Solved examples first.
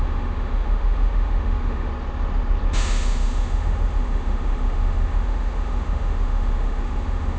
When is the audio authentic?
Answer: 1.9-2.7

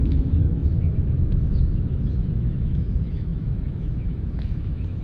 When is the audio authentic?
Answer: none

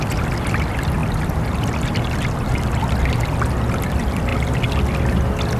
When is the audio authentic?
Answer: 0.0-5.6

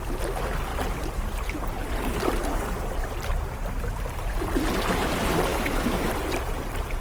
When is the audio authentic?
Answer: 0.0-5.5; 6.1-7.0

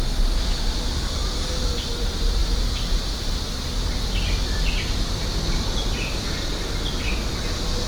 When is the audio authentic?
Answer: 0.0-7.9

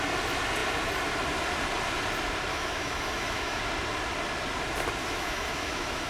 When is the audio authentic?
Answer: 0.0-2.5; 3.6-5.0

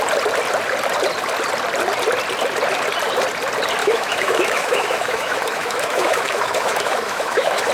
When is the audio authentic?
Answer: 0.0-3.8